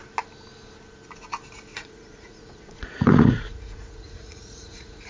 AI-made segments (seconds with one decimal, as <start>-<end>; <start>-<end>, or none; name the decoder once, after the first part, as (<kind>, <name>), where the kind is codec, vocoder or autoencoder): 1.7-5.1 (vocoder, Vocos)